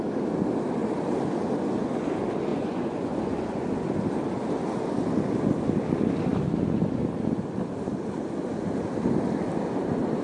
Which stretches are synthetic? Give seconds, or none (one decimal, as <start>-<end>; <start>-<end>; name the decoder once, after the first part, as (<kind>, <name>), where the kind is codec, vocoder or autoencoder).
2.5-3.7 (vocoder, Vocos)